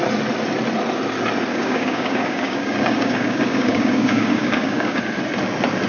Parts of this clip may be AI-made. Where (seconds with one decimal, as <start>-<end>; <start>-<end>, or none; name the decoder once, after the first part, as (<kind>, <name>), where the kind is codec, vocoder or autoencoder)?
1.5-5.0 (codec, DAC)